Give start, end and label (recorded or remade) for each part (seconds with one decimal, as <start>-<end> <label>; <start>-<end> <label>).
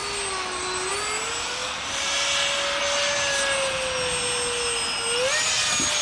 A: 0.0-6.0 recorded